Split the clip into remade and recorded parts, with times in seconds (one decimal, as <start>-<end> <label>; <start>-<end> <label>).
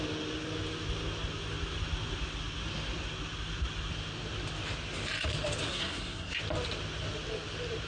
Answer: 0.0-5.7 recorded; 5.7-6.4 remade; 6.4-7.9 recorded